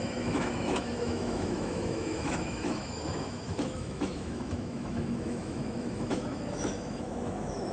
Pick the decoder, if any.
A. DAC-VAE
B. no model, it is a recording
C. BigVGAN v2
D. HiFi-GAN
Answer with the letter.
A